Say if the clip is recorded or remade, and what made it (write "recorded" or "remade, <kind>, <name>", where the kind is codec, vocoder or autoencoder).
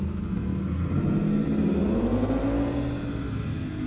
recorded